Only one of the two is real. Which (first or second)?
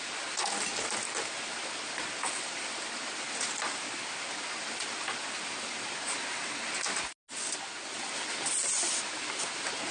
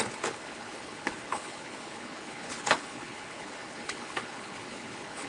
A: first